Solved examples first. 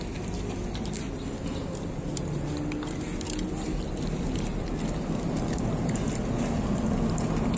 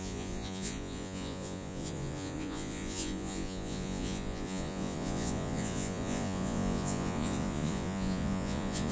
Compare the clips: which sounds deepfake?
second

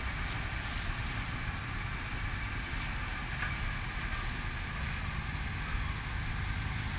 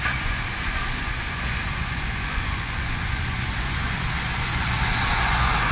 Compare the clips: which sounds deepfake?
second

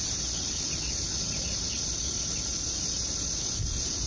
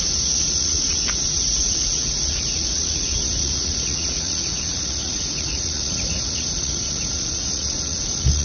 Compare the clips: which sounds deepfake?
second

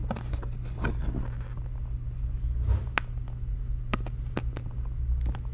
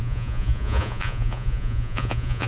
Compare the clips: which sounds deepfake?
second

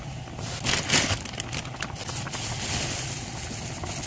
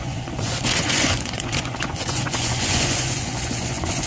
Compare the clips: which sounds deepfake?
second